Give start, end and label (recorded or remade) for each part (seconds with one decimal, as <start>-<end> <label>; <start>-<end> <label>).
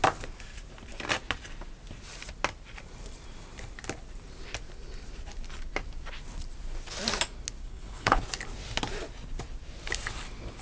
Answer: 0.0-7.6 recorded; 7.6-8.2 remade; 8.2-10.6 recorded